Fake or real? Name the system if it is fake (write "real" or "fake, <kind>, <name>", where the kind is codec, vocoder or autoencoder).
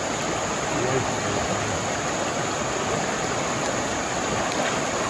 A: real